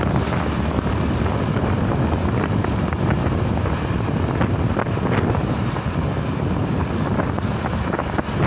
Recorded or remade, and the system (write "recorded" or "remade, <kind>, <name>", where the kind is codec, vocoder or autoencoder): recorded